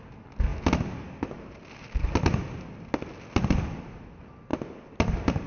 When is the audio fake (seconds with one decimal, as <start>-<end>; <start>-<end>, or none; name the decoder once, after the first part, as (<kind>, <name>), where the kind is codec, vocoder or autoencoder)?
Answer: none